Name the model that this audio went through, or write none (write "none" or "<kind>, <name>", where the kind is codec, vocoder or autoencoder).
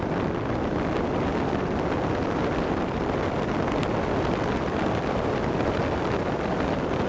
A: none